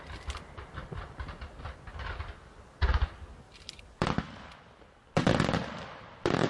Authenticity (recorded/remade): recorded